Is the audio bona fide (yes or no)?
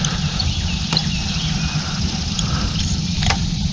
yes